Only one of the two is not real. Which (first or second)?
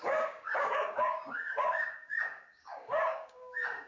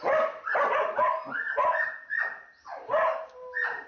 first